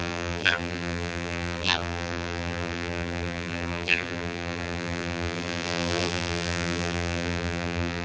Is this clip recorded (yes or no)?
no